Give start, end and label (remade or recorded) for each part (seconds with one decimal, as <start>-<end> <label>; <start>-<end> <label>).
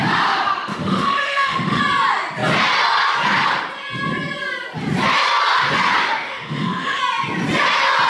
0.0-0.7 recorded; 0.7-1.8 remade; 1.8-6.0 recorded; 6.0-7.0 remade; 7.0-8.1 recorded